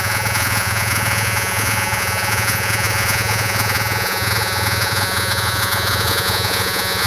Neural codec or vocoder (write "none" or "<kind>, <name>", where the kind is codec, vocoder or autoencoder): vocoder, Vocos